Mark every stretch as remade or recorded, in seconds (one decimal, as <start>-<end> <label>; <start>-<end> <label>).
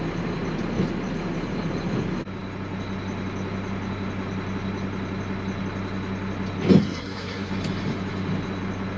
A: 0.0-6.8 recorded; 6.8-7.5 remade; 7.5-9.0 recorded